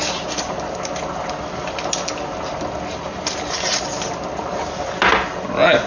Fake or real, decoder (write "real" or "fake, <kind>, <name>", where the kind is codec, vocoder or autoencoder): real